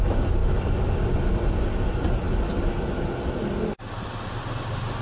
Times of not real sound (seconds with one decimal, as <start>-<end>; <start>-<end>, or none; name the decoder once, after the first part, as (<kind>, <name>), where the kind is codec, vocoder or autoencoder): none